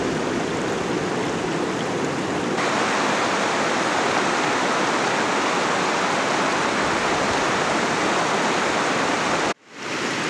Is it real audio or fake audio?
real